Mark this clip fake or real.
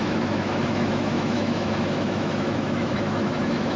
fake